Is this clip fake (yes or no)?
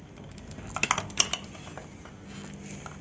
no